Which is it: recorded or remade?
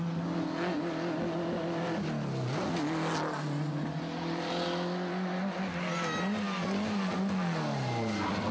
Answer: recorded